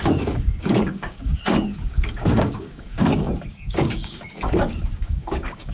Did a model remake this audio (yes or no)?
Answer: yes